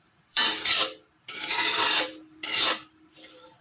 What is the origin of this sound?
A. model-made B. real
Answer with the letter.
A